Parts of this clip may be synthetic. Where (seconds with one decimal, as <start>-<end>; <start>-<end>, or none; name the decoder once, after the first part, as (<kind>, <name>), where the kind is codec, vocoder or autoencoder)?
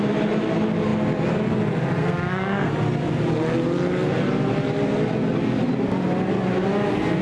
2.0-2.7 (codec, SNAC)